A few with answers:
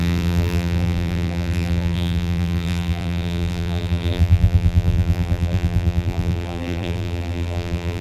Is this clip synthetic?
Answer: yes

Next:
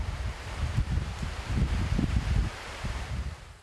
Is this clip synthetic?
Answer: yes